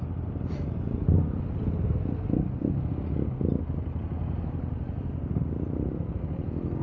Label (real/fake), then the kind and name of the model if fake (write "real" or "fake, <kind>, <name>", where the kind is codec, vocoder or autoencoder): real